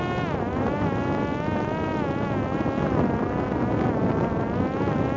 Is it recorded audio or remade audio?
recorded